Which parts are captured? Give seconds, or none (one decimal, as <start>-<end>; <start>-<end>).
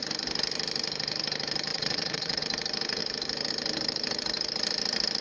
0.0-1.7; 2.4-5.2